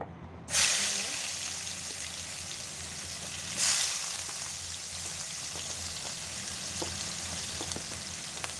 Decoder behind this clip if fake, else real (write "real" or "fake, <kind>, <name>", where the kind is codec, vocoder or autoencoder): real